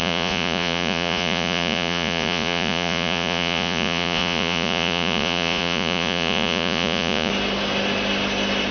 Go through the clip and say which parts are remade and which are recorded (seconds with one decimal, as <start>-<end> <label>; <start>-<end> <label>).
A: 0.0-7.3 remade; 7.3-8.7 recorded